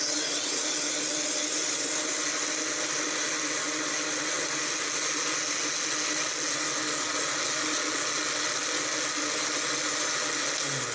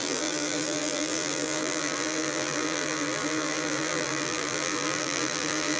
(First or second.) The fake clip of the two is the second